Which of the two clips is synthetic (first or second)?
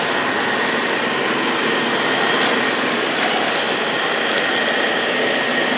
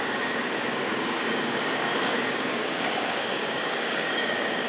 second